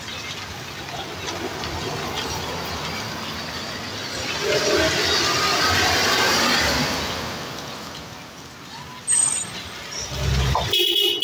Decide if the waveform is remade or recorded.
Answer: recorded